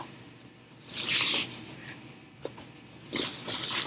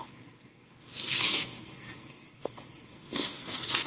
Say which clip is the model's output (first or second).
second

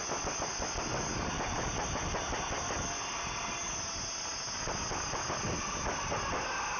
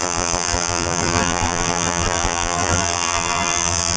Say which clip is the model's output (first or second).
second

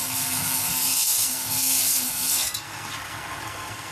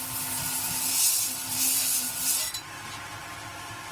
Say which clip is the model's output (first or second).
first